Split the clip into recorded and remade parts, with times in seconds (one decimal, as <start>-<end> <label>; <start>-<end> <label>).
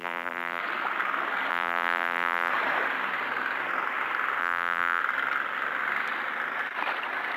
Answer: 0.0-0.6 remade; 0.6-1.5 recorded; 1.5-2.5 remade; 2.5-4.4 recorded; 4.4-5.0 remade; 5.0-7.4 recorded